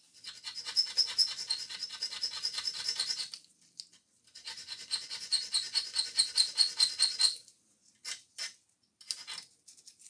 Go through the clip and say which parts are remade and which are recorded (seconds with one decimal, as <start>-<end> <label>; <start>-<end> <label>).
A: 0.0-4.3 recorded; 4.3-6.2 remade; 6.2-10.1 recorded